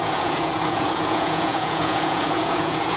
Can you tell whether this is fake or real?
fake